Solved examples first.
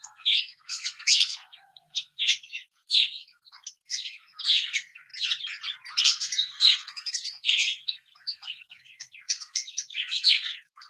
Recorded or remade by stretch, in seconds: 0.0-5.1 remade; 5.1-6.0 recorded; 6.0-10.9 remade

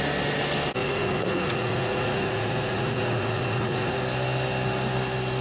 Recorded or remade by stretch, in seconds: 0.0-0.8 recorded; 0.8-4.0 remade; 4.0-5.4 recorded

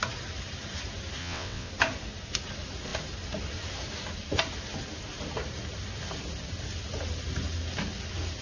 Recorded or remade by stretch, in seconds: 0.0-1.2 recorded; 1.2-1.7 remade; 1.7-8.4 recorded